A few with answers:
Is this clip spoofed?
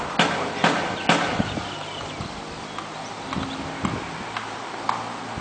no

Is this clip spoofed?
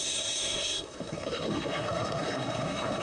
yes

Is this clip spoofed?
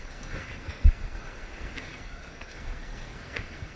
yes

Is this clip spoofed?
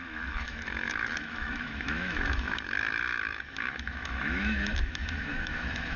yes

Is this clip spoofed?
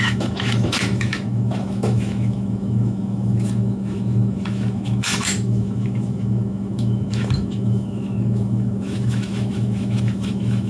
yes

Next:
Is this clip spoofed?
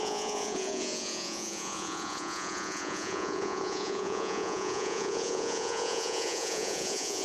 yes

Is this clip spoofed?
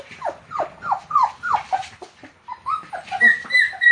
yes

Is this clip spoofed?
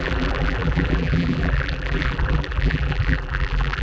yes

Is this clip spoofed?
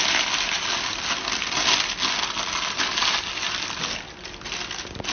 no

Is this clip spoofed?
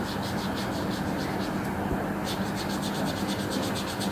no